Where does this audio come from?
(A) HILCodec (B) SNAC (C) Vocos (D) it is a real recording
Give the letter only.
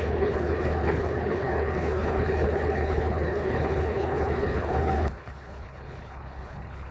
A